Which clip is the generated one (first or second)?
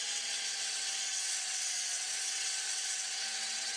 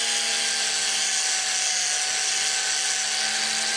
first